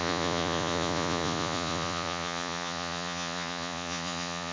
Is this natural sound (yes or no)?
no